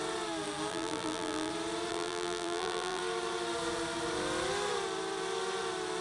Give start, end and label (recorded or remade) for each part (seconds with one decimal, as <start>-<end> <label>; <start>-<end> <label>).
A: 0.0-0.7 recorded; 0.7-1.5 remade; 1.5-1.9 recorded; 1.9-3.0 remade; 3.0-6.0 recorded